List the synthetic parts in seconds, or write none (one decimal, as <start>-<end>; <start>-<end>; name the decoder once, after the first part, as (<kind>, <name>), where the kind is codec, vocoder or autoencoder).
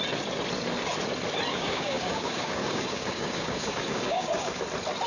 1.5-4.6 (codec, DAC)